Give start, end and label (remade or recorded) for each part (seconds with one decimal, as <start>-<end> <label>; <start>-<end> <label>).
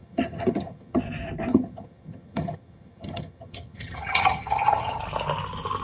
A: 0.0-1.0 remade; 1.0-1.5 recorded; 1.5-5.0 remade; 5.0-5.8 recorded